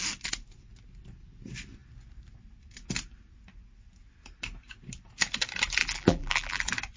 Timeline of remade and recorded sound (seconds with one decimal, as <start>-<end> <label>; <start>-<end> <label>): 0.0-5.8 recorded; 5.8-6.6 remade; 6.6-7.0 recorded